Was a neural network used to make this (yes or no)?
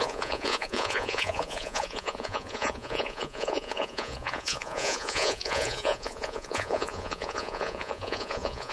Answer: yes